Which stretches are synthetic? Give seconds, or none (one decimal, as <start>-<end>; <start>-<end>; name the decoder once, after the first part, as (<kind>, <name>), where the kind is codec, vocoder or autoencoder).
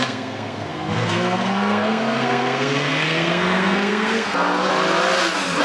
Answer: 0.0-4.7 (codec, SNAC)